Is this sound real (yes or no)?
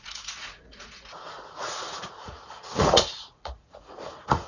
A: no